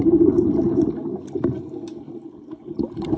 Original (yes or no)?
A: yes